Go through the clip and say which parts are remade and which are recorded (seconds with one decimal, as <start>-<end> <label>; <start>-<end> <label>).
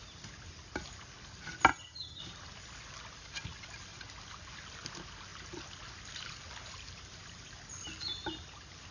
0.0-1.7 recorded; 1.7-2.2 remade; 2.2-8.9 recorded